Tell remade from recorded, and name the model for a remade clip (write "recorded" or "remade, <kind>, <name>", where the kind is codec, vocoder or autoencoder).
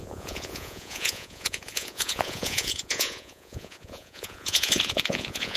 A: remade, vocoder, Vocos